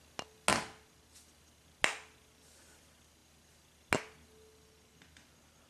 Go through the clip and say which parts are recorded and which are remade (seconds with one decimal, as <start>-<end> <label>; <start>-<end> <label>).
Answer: 0.0-5.7 recorded

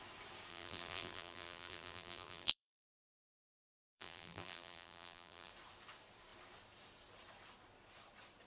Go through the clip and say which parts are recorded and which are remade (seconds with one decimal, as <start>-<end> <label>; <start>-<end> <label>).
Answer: 0.0-0.5 recorded; 0.5-5.5 remade; 5.5-8.5 recorded

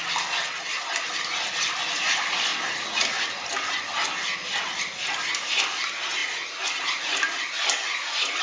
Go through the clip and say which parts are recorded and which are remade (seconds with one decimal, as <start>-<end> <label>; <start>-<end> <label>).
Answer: 0.0-8.4 recorded

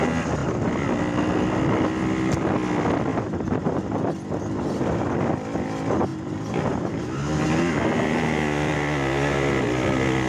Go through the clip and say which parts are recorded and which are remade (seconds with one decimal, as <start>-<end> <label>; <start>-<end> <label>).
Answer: 0.0-3.1 recorded; 3.1-3.8 remade; 3.8-10.3 recorded

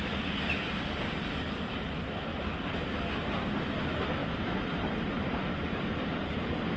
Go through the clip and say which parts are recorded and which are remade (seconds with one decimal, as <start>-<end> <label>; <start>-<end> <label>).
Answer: 0.0-6.8 recorded

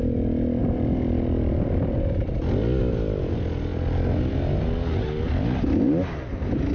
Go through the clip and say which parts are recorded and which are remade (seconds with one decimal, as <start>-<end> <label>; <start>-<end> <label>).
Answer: 0.0-0.6 recorded; 0.6-2.0 remade; 2.0-6.7 recorded

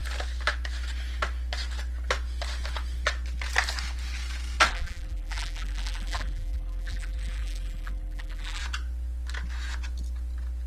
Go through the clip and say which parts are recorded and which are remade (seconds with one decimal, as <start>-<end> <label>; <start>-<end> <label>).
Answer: 0.0-4.7 recorded; 4.7-8.6 remade; 8.6-10.7 recorded